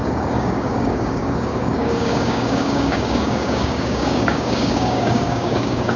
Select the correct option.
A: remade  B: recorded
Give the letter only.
A